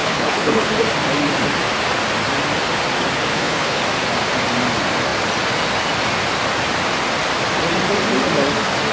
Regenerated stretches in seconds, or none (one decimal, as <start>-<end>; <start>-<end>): 0.0-0.7; 3.3-3.8